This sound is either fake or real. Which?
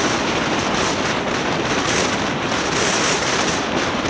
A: fake